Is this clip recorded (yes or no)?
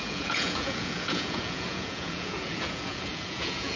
no